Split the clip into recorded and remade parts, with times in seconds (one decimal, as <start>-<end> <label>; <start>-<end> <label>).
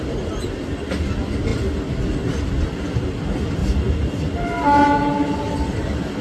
0.0-6.2 recorded